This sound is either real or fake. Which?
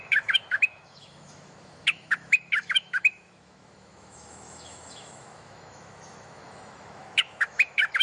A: fake